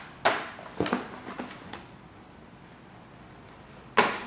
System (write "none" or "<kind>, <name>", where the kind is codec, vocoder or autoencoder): none